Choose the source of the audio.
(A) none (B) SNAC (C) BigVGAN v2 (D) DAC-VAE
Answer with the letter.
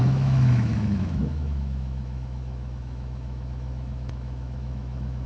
D